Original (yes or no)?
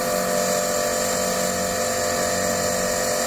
yes